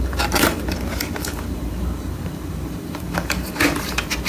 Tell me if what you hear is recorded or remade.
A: remade